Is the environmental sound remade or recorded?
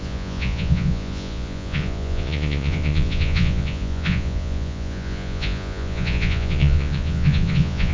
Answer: remade